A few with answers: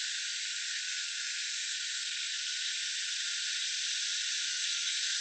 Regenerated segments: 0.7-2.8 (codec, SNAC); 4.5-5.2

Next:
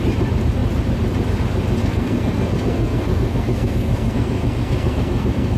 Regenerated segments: 1.8-5.6 (codec, SNAC)

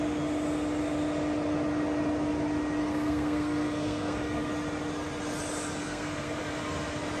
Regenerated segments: 2.8-4.5 (codec, SNAC); 5.8-6.4

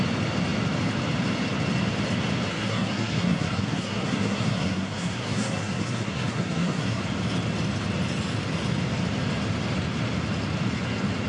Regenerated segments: 2.5-7.0 (codec, SNAC)

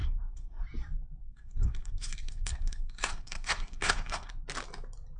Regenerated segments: 0.0-0.6 (codec, SNAC); 1.2-4.3

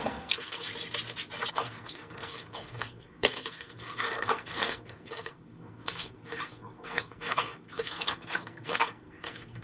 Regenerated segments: 0.0-0.7 (codec, SNAC); 1.5-9.6